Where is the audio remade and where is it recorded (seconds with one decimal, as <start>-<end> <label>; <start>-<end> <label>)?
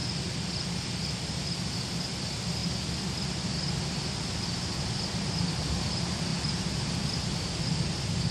0.0-0.5 remade; 0.5-8.3 recorded